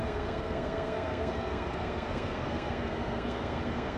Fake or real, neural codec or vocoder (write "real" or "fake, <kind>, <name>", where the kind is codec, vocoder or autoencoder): fake, codec, SNAC